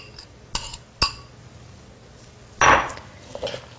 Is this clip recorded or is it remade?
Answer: recorded